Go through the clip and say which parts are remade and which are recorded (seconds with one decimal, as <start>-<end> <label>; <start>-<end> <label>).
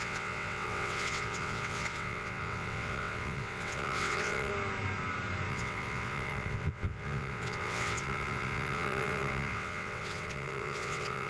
0.0-4.5 remade; 4.5-5.5 recorded; 5.5-11.3 remade